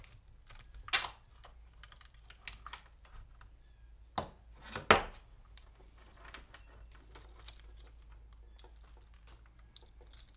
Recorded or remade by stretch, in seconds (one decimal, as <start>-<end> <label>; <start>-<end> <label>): 0.0-10.4 recorded